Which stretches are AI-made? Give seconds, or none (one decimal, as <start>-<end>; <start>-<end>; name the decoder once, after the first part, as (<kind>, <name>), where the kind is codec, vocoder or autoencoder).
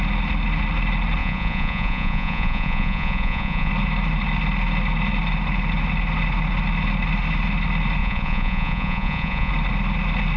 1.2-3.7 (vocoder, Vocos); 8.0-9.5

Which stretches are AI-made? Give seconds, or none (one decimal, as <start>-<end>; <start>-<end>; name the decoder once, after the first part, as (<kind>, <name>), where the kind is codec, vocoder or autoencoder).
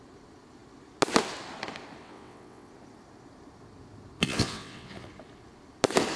2.0-2.7 (vocoder, WaveNeXt); 4.2-5.1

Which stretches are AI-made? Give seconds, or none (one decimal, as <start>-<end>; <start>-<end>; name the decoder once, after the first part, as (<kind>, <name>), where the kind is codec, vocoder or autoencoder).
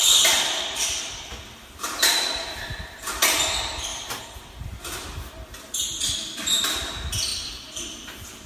0.0-3.0 (vocoder, BigVGAN v2); 3.9-4.6; 7.3-8.5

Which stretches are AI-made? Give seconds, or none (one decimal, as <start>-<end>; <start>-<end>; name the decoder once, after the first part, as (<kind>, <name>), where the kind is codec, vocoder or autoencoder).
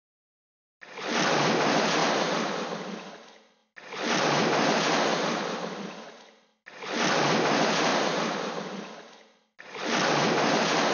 2.0-3.1 (vocoder, BigVGAN v2); 5.1-6.2; 7.9-8.9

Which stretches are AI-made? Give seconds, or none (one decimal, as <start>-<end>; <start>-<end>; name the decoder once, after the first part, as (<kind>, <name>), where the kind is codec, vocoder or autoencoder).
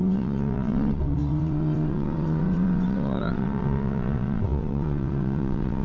0.0-5.8 (vocoder, WaveNeXt)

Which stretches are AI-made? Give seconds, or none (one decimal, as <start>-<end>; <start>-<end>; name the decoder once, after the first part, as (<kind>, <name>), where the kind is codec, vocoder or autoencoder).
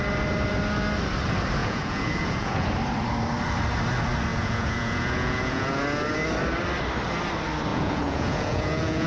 1.6-2.7 (vocoder, Vocos); 4.3-5.8; 7.7-9.1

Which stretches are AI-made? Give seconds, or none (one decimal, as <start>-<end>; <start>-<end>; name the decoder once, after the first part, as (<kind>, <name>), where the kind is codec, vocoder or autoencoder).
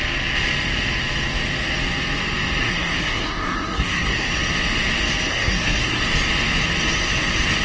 2.6-4.3 (codec, SNAC); 5.3-6.0